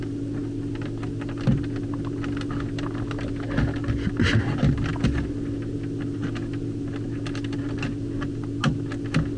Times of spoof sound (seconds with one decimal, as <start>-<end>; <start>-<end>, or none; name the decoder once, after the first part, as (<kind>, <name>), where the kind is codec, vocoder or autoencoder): none